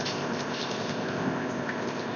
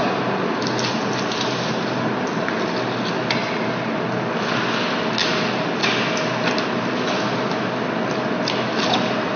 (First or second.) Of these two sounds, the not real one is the first